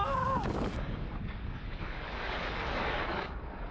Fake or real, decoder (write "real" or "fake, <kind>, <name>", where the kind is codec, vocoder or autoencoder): fake, codec, DAC